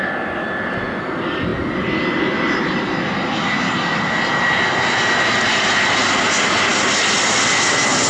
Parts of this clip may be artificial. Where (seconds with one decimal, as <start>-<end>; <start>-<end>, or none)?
none